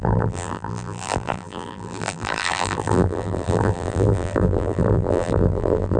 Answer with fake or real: fake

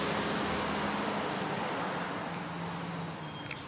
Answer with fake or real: real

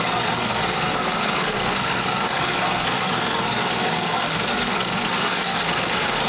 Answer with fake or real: fake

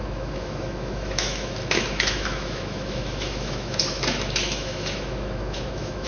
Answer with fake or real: fake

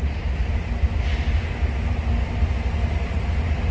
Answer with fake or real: real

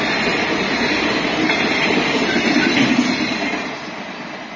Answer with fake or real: real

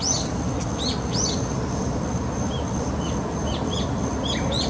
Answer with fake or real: real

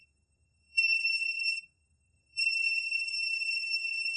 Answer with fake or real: fake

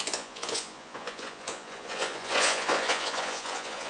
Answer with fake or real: fake